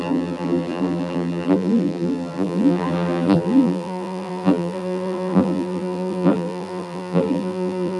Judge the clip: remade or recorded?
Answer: remade